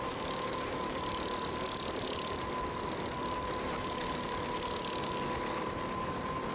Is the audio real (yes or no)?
yes